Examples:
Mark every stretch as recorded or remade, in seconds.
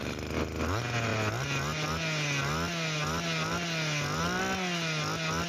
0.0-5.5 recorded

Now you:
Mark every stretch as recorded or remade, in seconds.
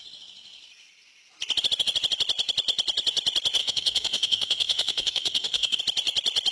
0.0-3.6 recorded; 3.6-5.8 remade; 5.8-6.5 recorded